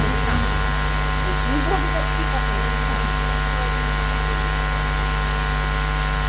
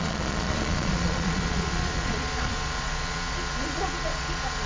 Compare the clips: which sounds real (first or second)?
first